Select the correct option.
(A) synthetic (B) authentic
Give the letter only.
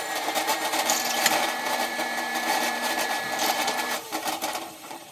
A